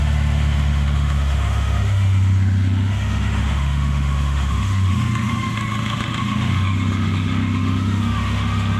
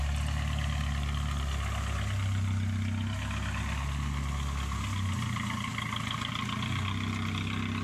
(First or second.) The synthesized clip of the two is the first